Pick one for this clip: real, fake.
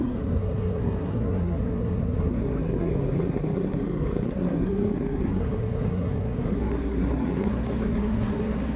fake